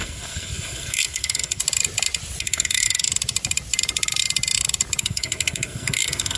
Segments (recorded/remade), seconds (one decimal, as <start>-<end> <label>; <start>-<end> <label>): 0.0-1.6 remade; 1.6-2.4 recorded; 2.4-3.1 remade; 3.1-5.0 recorded; 5.0-6.4 remade